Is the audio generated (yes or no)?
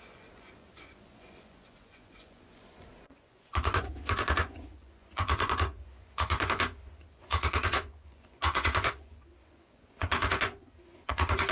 yes